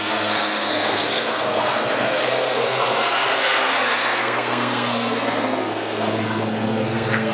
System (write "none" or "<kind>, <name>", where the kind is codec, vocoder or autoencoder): codec, SNAC